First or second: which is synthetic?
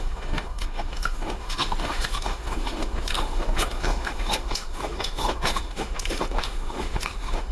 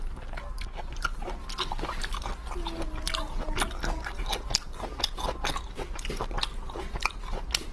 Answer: first